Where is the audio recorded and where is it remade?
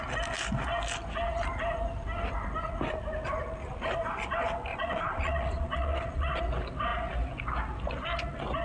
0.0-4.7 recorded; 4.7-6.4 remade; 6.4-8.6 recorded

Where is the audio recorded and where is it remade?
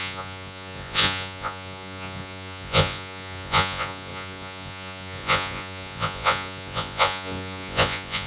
0.0-8.3 remade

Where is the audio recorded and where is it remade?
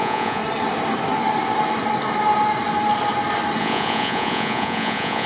0.0-0.4 remade; 0.4-3.6 recorded; 3.6-5.3 remade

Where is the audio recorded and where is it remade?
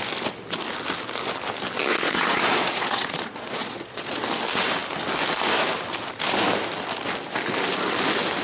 0.0-1.9 recorded; 1.9-4.2 remade; 4.2-8.4 recorded